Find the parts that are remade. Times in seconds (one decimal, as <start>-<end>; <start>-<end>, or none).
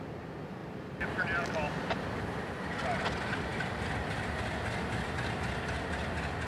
0.6-3.0; 3.5-4.0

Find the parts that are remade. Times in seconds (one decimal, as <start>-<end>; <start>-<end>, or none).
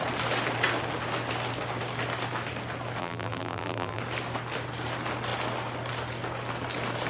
3.0-4.0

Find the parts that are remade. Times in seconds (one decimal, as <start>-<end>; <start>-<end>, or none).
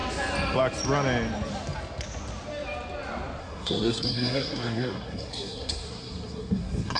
3.4-7.0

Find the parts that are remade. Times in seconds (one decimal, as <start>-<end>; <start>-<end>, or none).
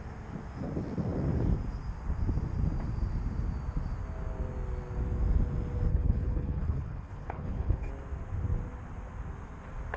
5.9-7.9